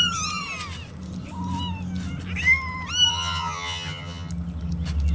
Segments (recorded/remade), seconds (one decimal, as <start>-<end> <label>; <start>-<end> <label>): 0.0-3.1 recorded; 3.1-4.3 remade; 4.3-5.1 recorded